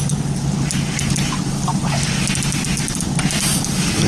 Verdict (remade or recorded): recorded